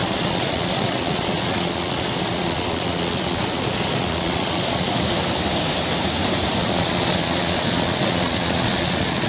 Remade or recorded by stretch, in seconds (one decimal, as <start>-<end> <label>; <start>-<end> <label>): 0.0-5.0 remade; 5.0-6.6 recorded; 6.6-9.3 remade